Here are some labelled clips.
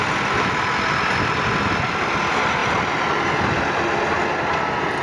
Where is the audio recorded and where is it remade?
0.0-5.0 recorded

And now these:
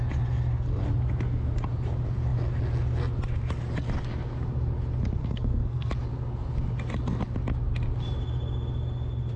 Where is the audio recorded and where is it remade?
0.0-5.2 recorded; 5.2-5.9 remade; 5.9-9.4 recorded

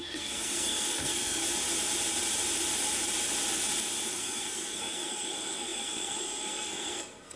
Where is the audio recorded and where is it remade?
0.0-1.4 remade; 1.4-4.1 recorded; 4.1-7.4 remade

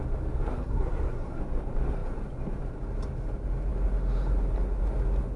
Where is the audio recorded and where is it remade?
0.0-0.5 recorded; 0.5-1.4 remade; 1.4-5.4 recorded